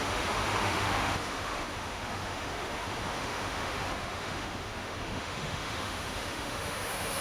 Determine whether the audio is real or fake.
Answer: fake